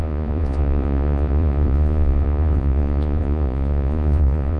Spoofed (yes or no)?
yes